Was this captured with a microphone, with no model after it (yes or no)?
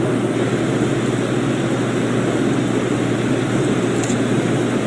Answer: yes